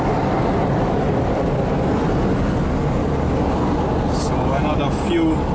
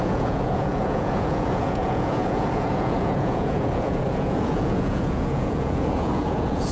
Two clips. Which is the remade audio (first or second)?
second